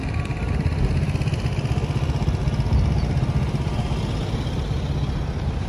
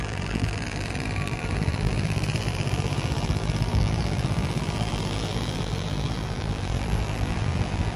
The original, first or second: first